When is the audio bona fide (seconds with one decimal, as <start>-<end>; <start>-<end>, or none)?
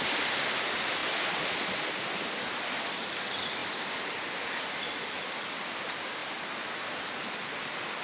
0.0-8.0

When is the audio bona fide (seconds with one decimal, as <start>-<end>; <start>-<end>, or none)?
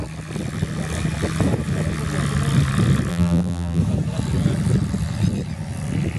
0.0-3.1; 3.8-6.2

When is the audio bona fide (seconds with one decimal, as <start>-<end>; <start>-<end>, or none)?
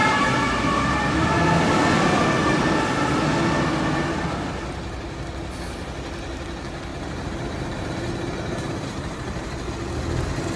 1.3-6.9; 9.7-10.6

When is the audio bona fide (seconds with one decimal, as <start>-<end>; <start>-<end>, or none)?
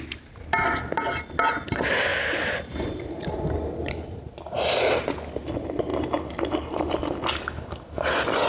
0.0-2.1; 3.4-5.9; 6.4-8.5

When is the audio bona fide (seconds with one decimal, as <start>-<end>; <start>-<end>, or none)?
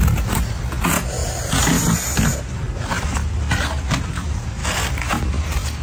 0.0-5.8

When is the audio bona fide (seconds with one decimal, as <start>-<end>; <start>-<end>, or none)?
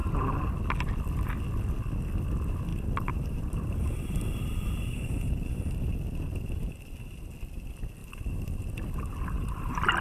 0.5-2.7; 5.8-10.0